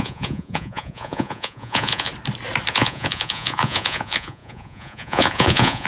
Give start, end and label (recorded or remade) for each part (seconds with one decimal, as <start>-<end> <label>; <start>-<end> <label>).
0.0-2.1 remade; 2.1-2.7 recorded; 2.7-5.9 remade